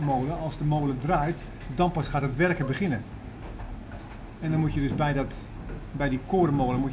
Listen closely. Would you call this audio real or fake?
real